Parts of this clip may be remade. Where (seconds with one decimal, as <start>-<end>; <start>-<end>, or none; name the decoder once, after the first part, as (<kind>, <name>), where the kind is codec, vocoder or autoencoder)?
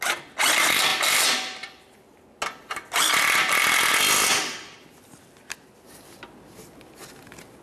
none